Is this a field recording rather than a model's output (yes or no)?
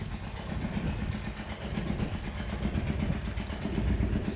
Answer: yes